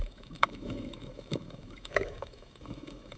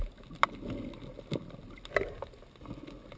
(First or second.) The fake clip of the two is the first